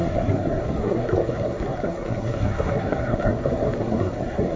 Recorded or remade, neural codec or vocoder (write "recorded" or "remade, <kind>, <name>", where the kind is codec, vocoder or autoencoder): remade, codec, SNAC